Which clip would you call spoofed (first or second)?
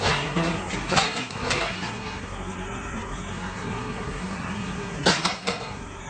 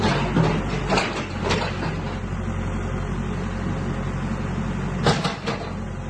first